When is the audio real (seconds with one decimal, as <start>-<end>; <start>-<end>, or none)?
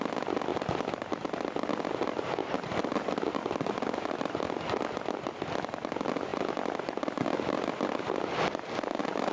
0.0-9.3